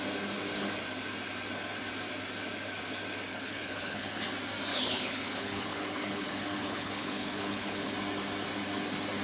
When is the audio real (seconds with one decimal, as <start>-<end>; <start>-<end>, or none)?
0.0-3.3; 4.2-4.7; 7.9-9.2